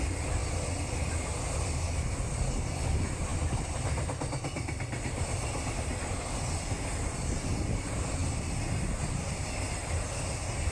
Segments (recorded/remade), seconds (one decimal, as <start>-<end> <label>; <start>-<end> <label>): 0.0-10.7 recorded